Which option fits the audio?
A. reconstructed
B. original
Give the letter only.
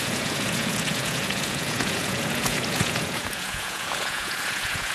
A